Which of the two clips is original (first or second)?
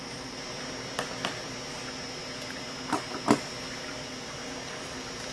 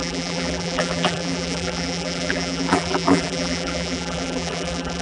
first